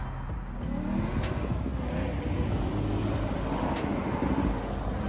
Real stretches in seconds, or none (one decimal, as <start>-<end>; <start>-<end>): 0.0-5.1

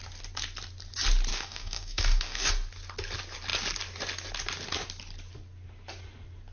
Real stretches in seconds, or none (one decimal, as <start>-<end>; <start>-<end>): 0.0-1.3; 2.5-6.5

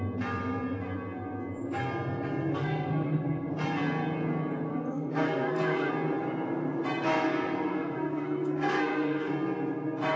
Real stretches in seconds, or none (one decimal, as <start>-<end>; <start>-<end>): 0.0-2.5; 3.5-4.7; 5.9-7.7; 9.3-10.2

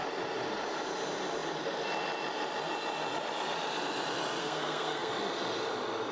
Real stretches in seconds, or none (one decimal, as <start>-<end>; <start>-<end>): 0.0-4.4; 5.1-6.1

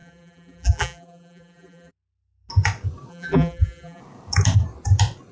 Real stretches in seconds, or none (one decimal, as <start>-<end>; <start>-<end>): 2.5-3.1; 4.0-5.3

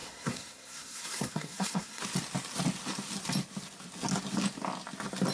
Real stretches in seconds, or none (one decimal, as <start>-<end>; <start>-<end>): 2.0-5.3